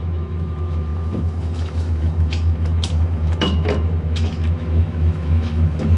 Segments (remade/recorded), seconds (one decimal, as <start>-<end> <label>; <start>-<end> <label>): 0.0-6.0 remade